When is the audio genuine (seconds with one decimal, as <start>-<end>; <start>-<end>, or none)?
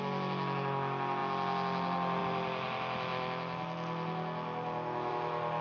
0.0-5.6